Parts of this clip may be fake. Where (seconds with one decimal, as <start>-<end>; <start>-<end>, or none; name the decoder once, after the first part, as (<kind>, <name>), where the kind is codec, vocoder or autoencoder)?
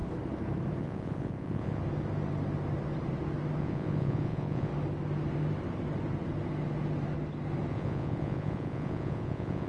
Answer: 0.8-1.8 (vocoder, Vocos); 3.6-4.7; 7.7-9.7